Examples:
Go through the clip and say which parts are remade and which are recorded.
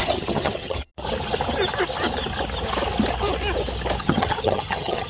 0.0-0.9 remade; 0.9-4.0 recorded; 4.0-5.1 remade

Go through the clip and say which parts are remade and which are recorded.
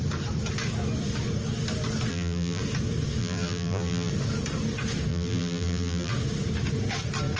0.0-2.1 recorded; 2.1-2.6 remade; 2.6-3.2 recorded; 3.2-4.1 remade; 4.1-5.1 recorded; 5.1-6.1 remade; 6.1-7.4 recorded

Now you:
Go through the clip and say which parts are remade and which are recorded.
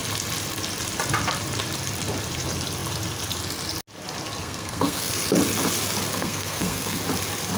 0.0-4.4 recorded; 4.4-5.1 remade; 5.1-6.1 recorded; 6.1-7.0 remade; 7.0-7.6 recorded